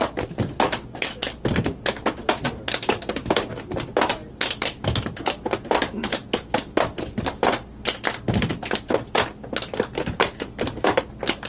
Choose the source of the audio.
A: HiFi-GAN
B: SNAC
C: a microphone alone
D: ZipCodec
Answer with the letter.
C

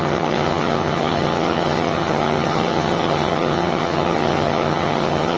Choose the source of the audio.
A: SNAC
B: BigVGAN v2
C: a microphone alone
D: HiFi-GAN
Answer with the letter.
D